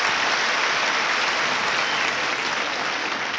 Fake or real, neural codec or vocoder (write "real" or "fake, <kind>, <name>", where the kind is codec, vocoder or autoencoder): real